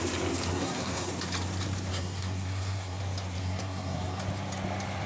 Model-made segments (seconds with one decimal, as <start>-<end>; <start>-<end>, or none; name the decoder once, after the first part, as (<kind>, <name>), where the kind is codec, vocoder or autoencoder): 0.5-1.1 (codec, SNAC); 1.9-3.0; 3.4-4.2

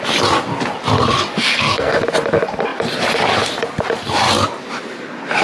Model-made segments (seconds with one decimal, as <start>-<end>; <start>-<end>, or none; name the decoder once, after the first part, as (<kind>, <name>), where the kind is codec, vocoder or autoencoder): 1.3-1.9 (codec, SNAC)

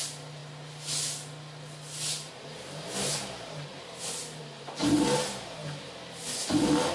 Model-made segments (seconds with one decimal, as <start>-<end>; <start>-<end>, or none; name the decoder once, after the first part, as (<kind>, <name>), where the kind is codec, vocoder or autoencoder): none

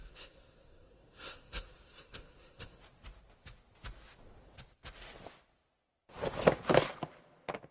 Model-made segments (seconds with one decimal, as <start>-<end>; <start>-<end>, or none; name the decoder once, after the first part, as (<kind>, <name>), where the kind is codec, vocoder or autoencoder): 0.0-2.8 (codec, SNAC)